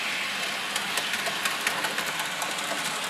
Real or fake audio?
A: real